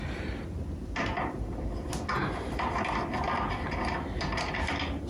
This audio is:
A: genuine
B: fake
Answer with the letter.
A